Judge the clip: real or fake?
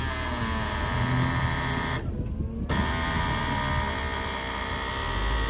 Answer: real